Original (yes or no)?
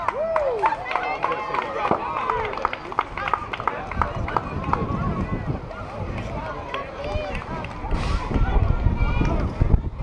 yes